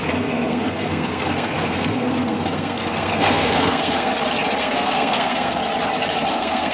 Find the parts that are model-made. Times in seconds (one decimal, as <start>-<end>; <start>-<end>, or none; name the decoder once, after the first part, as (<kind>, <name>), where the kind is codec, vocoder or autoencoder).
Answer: 0.0-4.1 (codec, SNAC); 4.6-5.6; 6.3-6.7